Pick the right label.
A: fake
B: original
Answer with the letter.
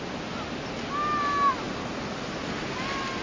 B